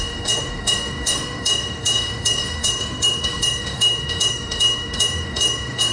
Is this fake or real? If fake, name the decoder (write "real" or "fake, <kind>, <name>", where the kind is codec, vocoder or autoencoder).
fake, autoencoder, DAC-VAE